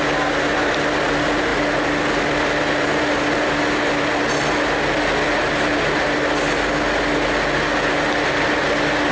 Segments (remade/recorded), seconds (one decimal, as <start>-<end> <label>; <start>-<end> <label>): 0.0-9.1 recorded